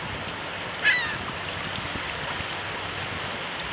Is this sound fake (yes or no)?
no